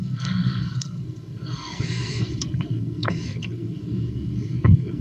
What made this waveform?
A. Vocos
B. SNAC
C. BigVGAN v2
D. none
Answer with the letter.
B